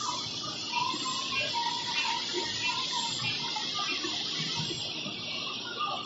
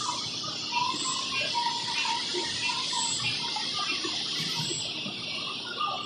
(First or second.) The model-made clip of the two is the second